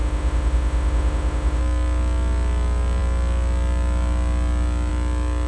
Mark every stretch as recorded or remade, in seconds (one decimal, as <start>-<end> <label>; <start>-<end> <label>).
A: 0.0-1.6 remade; 1.6-5.5 recorded